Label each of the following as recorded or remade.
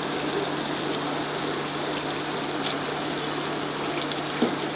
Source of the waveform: recorded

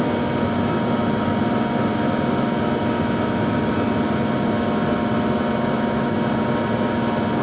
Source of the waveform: recorded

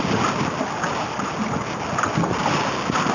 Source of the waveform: recorded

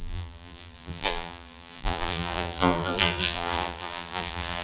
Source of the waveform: remade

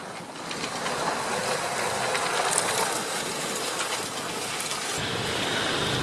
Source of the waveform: recorded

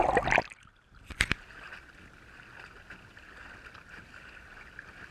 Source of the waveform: recorded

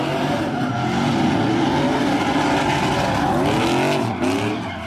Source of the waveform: recorded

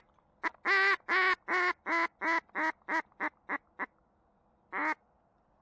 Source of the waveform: recorded